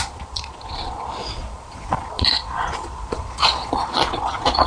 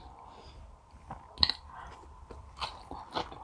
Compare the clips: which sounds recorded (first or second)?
second